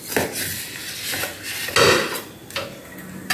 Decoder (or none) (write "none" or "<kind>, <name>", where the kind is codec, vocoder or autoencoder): none